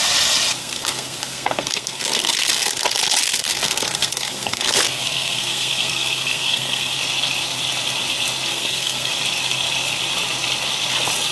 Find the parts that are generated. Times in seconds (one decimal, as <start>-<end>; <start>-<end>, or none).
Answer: 0.6-2.7; 3.2-7.0; 8.5-9.1